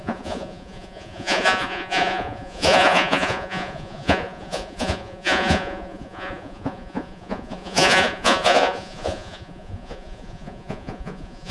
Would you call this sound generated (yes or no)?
yes